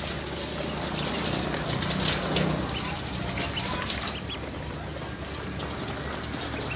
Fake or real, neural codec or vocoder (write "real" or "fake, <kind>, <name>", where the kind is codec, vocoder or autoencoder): real